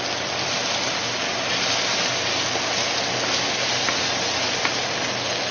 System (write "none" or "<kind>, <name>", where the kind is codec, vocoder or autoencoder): none